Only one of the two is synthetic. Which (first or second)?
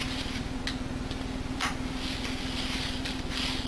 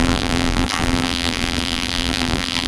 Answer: second